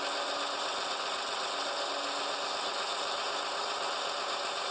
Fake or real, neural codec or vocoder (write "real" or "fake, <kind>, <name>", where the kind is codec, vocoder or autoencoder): real